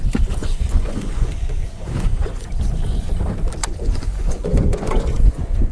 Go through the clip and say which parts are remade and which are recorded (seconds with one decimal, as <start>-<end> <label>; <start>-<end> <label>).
0.0-0.4 recorded; 0.4-3.1 remade; 3.1-3.6 recorded; 3.6-5.7 remade